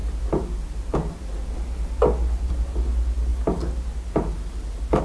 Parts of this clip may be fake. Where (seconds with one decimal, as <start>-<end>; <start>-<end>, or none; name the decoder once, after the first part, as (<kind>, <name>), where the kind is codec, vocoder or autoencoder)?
none